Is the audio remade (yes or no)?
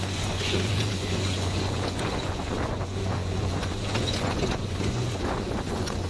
yes